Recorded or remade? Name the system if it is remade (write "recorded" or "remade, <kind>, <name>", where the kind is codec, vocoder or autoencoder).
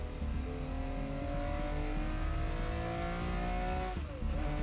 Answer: recorded